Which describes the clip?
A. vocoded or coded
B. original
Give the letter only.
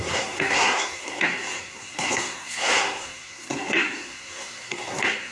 A